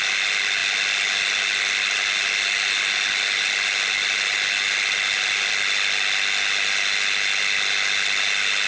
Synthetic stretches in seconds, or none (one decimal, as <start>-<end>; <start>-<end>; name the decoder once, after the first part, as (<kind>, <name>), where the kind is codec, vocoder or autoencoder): none